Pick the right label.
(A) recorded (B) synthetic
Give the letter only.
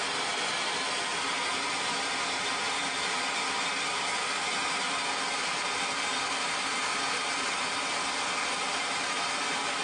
A